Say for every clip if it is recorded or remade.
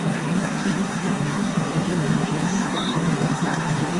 remade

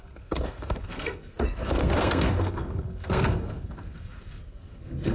remade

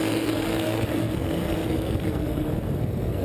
remade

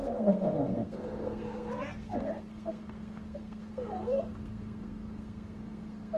remade